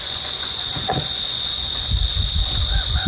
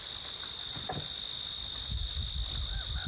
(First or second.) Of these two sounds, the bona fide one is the second